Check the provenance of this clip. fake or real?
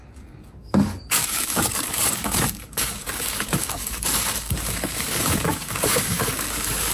fake